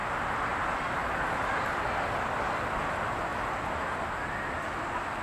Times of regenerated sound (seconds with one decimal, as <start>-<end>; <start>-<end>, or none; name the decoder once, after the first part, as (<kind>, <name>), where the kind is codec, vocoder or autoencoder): none

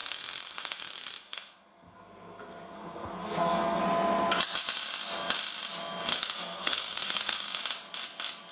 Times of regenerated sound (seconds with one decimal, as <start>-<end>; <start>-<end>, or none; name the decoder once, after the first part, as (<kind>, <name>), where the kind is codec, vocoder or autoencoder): 0.0-3.8 (codec, SNAC); 6.1-7.6

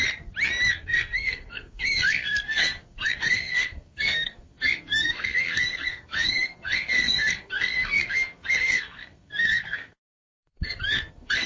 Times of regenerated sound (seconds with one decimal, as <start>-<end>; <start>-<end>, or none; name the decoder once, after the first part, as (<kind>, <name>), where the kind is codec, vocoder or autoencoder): 0.7-11.5 (codec, SNAC)

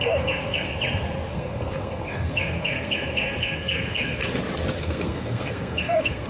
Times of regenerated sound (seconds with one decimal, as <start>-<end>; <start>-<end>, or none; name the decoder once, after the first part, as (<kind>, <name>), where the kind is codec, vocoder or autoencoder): 0.0-0.7 (codec, SNAC); 1.3-4.2; 4.8-6.3

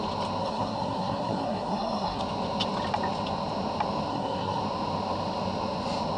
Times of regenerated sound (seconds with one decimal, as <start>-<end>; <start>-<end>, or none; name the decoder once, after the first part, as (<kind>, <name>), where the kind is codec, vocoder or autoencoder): 0.4-2.2 (codec, SNAC); 4.1-4.6

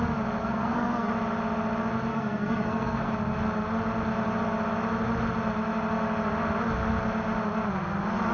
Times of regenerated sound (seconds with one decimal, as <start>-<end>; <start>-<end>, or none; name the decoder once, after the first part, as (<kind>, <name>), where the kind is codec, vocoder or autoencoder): 0.4-1.1 (codec, SNAC); 2.1-3.1